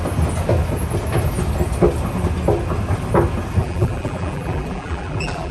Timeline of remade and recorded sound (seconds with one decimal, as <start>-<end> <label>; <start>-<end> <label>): 0.0-3.6 recorded; 3.6-5.5 remade